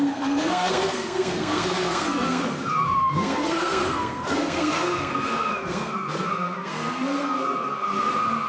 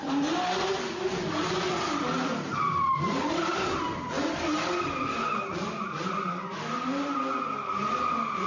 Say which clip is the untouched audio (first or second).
second